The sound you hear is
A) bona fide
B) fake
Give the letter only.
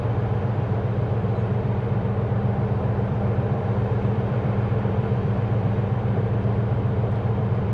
B